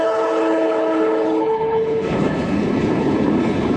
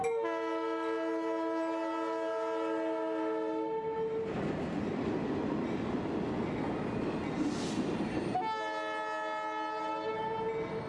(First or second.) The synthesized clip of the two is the first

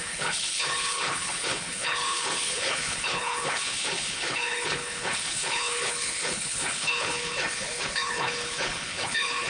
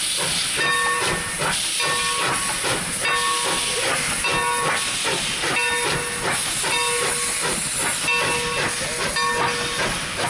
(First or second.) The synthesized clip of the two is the first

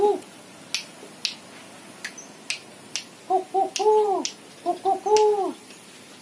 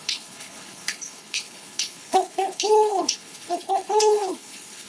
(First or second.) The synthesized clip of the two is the second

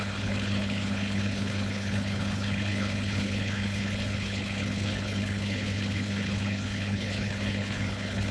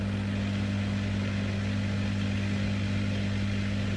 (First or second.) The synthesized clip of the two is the first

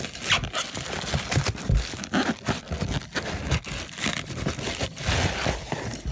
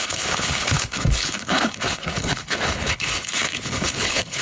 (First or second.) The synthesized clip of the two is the second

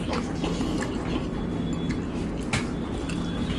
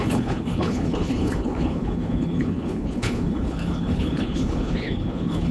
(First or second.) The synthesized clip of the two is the second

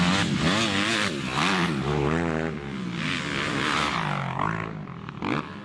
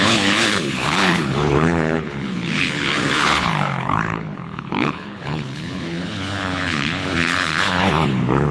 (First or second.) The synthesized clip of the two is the second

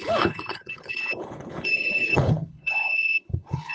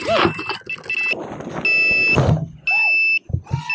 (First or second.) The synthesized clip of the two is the first